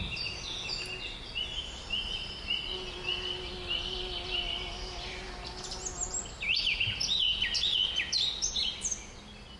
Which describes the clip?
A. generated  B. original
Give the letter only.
B